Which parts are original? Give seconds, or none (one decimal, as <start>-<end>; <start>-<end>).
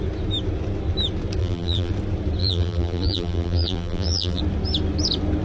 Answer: 0.0-1.4; 1.9-2.4; 4.4-5.4